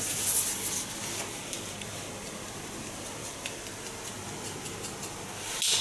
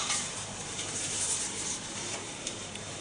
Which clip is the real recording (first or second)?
first